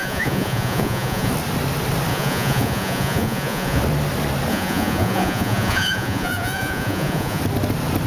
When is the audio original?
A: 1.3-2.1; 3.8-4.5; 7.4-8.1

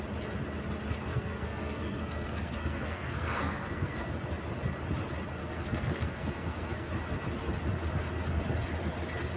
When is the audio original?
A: 0.0-1.1; 4.1-5.4; 6.9-9.4

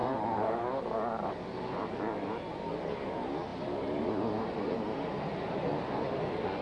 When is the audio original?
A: 0.0-6.6

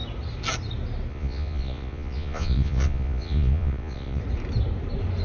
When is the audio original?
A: 0.0-1.1; 4.2-5.2

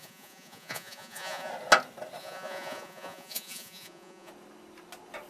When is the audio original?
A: 1.5-2.2; 4.3-5.3

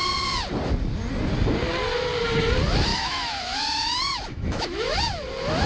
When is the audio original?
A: 0.0-2.9; 5.0-5.7

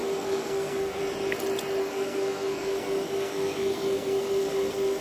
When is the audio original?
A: 1.0-1.8